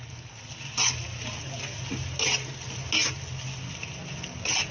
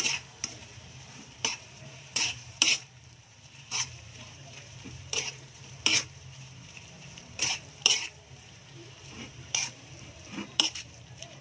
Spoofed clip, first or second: second